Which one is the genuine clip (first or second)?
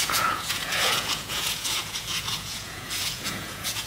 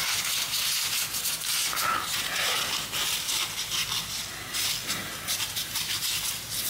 second